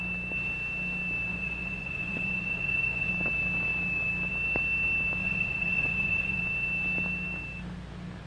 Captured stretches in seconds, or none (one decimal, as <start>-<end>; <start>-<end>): 0.0-1.3; 3.1-5.2; 6.4-8.3